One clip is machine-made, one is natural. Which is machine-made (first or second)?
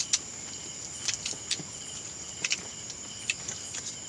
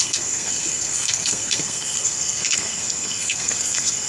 second